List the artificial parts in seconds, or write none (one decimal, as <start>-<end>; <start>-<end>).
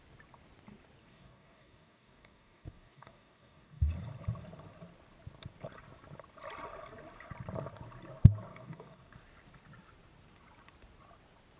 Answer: 1.0-3.9; 8.5-9.2